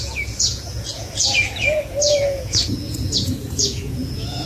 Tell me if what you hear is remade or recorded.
remade